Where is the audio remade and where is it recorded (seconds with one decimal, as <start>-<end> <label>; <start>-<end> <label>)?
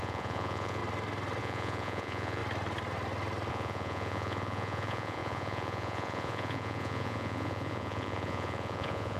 0.0-0.8 remade; 0.8-1.4 recorded; 1.4-2.4 remade; 2.4-3.5 recorded; 3.5-9.2 remade